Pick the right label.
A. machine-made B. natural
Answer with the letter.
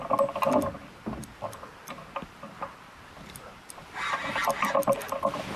B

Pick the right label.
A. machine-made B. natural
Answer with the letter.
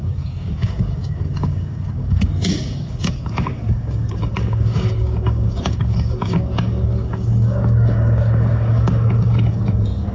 A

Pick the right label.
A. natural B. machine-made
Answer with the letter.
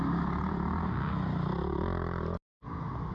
A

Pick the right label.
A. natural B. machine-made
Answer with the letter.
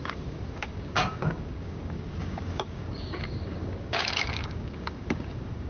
B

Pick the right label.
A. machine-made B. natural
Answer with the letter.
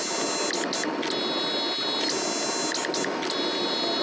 B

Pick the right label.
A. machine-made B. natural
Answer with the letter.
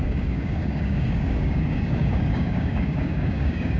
A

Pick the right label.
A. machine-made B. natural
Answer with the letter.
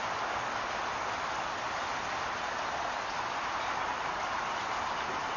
B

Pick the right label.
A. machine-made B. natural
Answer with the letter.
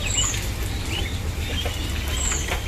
B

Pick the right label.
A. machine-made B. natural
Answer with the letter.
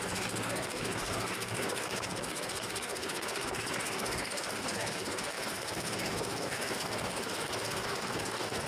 A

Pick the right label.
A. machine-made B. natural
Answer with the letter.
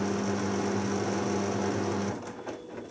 B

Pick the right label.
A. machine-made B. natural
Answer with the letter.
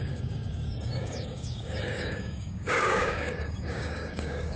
A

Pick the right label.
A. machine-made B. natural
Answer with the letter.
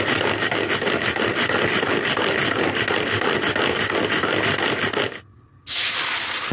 B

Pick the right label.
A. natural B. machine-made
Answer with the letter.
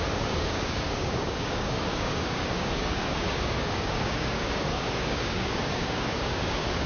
B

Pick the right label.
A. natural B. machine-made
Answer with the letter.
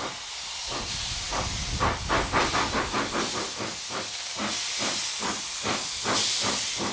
A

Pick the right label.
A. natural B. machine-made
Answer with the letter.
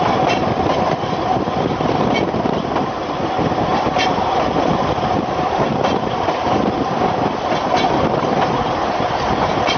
A